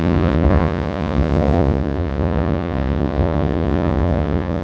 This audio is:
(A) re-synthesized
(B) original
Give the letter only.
A